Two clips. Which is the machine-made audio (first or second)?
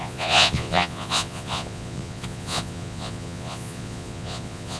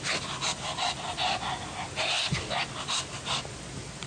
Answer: first